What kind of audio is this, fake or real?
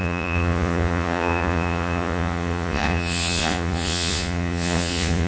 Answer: fake